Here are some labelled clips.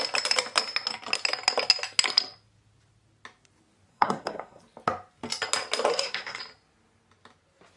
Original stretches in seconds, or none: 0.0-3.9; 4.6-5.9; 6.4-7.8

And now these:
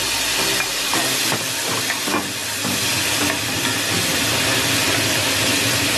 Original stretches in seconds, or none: 0.0-6.0

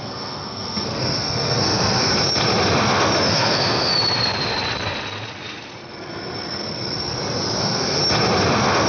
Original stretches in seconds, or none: 2.1-3.3; 3.9-7.6; 8.0-8.9

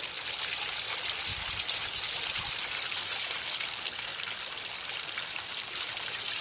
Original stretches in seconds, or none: 0.0-6.4

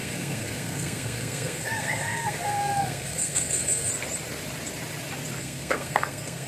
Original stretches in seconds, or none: 3.9-5.4